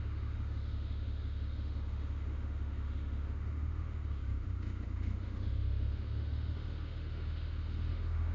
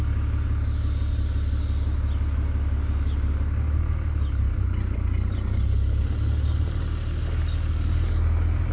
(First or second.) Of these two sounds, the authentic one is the second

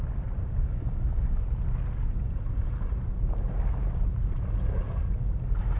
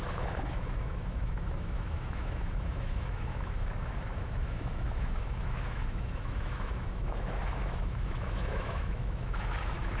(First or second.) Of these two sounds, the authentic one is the first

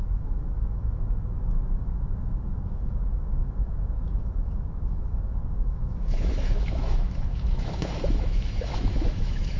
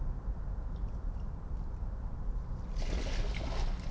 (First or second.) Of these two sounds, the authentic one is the second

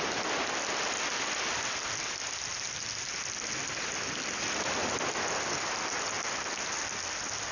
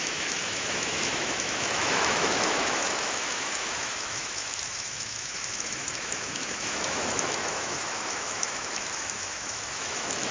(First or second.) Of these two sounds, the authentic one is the first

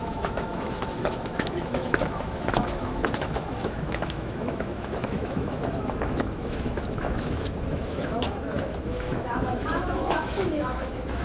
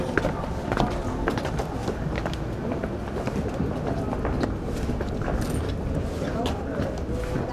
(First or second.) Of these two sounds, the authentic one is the second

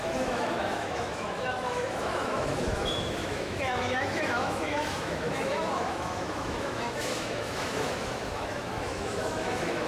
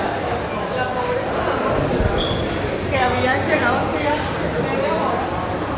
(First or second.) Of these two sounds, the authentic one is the second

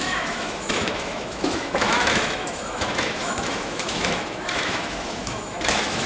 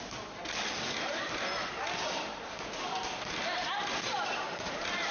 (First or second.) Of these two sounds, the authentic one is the second